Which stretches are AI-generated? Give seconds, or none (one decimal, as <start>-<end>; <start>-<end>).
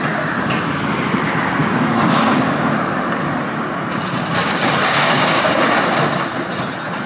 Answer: 1.6-2.7; 4.4-5.6